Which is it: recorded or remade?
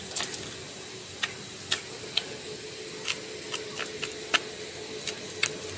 recorded